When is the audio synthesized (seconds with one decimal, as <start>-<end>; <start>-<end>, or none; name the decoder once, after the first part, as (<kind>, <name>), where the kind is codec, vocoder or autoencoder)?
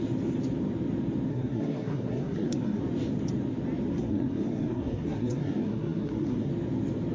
1.3-2.8 (codec, SNAC); 3.9-6.5